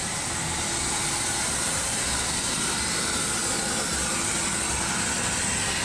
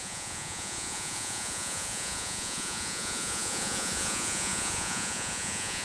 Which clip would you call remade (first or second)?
second